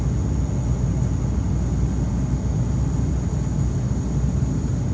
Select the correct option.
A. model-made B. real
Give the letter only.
B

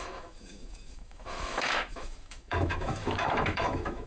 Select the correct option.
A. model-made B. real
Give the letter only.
A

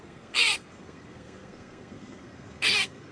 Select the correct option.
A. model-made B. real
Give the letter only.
A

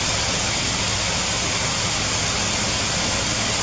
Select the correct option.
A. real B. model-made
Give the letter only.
A